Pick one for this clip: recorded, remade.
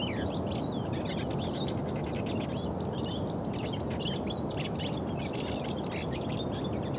recorded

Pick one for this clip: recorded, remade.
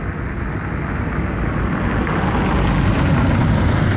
recorded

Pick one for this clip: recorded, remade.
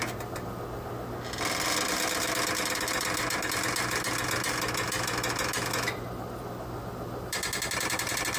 recorded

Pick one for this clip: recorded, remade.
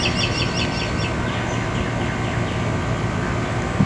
recorded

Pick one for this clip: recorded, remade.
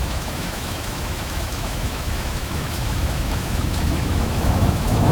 remade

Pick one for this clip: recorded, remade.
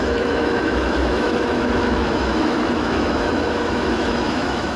remade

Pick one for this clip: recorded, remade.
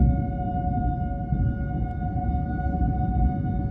recorded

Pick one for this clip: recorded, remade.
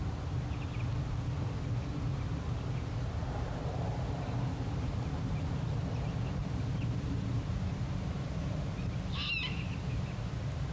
recorded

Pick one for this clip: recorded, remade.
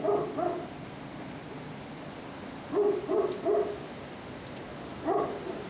recorded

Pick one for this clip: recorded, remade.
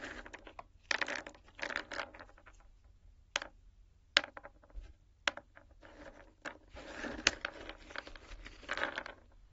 recorded